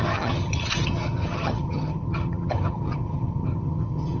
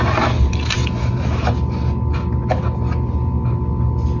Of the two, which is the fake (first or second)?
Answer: first